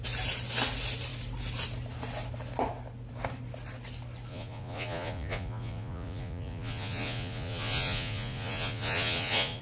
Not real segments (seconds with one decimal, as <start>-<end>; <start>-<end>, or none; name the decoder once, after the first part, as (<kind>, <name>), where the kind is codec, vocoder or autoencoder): 4.3-9.6 (vocoder, Vocos)

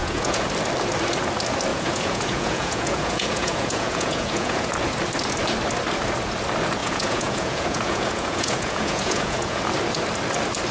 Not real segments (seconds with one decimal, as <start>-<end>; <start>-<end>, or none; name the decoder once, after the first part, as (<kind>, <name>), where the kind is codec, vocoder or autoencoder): 0.0-0.5 (vocoder, Vocos); 1.7-4.7; 6.8-9.6

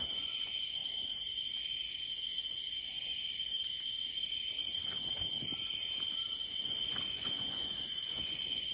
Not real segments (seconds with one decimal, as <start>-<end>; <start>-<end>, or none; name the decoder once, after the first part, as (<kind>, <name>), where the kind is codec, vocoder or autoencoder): 0.0-0.8 (vocoder, Vocos); 1.6-3.1; 6.6-8.7

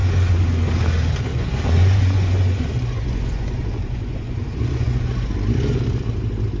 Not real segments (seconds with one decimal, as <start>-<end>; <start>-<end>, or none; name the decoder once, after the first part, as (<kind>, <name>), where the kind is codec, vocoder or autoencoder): 1.3-5.3 (vocoder, Vocos)